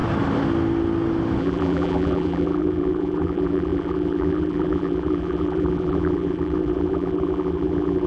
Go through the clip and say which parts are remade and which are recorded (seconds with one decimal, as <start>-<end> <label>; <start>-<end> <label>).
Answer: 0.0-1.4 recorded; 1.4-8.1 remade